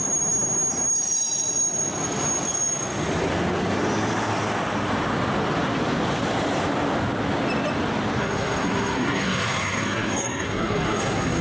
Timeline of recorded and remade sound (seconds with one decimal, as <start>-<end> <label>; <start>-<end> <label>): 0.0-8.2 recorded; 8.2-11.4 remade